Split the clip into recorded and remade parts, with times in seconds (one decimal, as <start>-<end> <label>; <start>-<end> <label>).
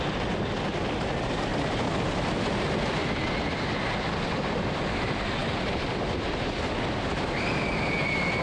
0.0-1.5 remade; 1.5-2.3 recorded; 2.3-8.4 remade